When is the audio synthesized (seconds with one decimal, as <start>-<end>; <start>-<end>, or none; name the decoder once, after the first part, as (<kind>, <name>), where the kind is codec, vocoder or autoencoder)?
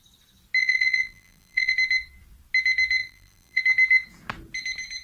0.6-1.7 (vocoder, BigVGAN v2); 3.0-3.6